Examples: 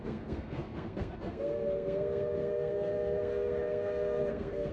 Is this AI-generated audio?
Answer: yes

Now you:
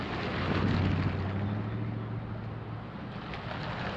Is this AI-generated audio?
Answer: no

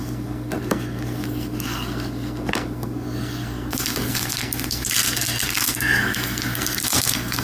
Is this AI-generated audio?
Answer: yes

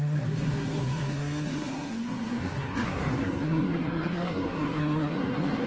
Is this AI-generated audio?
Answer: yes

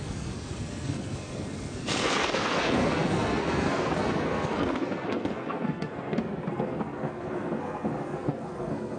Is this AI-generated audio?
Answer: yes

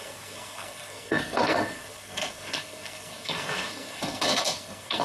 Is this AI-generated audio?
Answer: yes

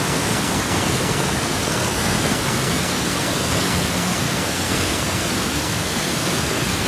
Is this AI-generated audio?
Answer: yes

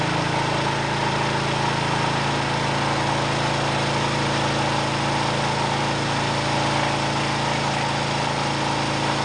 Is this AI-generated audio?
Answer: no